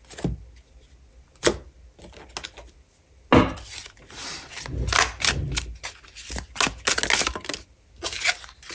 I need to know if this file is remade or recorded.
recorded